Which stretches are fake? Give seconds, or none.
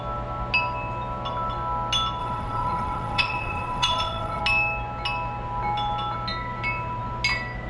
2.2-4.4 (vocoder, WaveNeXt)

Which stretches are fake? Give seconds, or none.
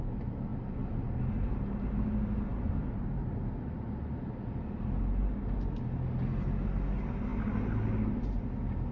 none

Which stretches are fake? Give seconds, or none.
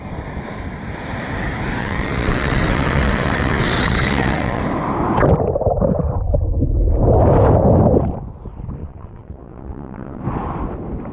1.8-4.6 (vocoder, WaveNeXt); 8.8-10.2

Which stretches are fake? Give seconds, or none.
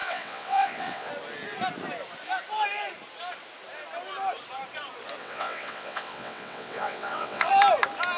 0.0-1.1 (vocoder, WaveNeXt); 5.2-7.5